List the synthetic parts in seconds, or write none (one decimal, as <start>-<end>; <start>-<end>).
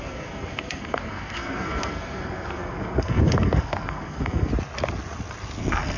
0.0-4.5; 5.6-6.0